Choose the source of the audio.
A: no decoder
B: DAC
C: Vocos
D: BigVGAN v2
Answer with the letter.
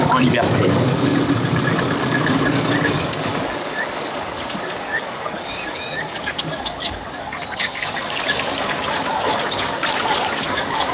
B